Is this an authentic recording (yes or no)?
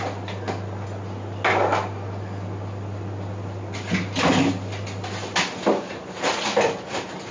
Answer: yes